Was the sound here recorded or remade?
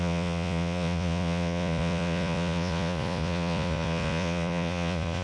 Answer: remade